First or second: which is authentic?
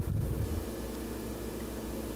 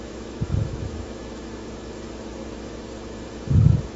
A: first